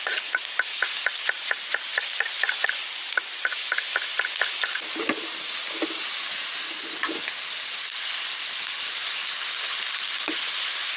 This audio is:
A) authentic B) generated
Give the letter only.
A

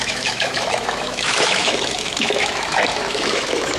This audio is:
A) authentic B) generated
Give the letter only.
B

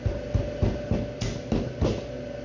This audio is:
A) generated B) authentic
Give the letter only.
B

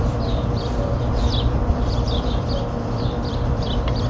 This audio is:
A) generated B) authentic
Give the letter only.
A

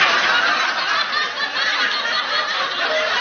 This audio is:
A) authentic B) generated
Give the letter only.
A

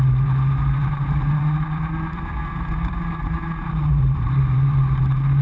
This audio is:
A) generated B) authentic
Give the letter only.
A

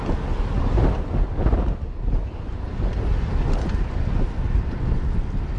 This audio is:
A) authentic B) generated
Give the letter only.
A